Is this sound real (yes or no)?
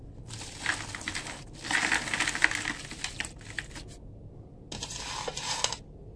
yes